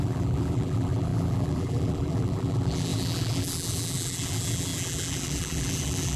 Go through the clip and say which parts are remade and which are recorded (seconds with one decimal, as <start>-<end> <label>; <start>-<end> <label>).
0.0-6.2 remade